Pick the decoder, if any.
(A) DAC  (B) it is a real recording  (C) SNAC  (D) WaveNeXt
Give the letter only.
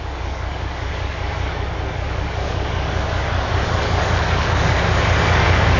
A